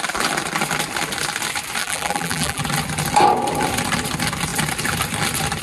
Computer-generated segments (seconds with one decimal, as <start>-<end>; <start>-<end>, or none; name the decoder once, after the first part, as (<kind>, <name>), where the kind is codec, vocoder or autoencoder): 1.8-2.6 (vocoder, BigVGAN v2)